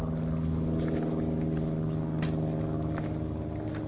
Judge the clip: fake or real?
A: real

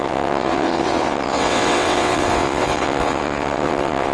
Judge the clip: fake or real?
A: fake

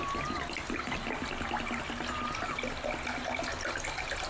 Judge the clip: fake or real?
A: real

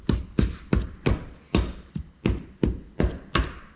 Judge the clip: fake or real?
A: real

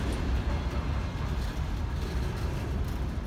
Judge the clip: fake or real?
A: real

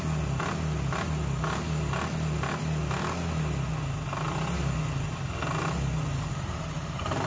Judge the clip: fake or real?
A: real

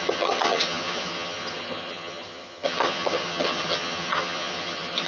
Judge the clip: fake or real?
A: fake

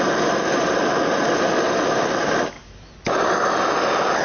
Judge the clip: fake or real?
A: real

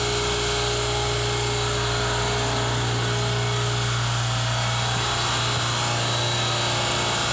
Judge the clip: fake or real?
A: real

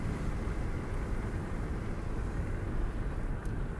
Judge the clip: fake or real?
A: fake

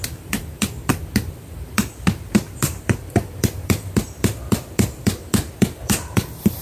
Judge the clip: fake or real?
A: fake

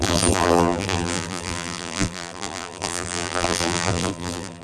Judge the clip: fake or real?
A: fake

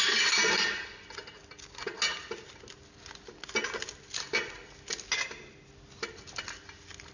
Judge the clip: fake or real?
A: real